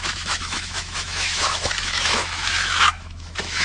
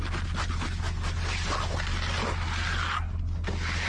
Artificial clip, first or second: first